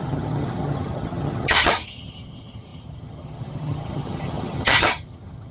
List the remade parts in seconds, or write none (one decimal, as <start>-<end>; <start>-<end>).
0.0-5.5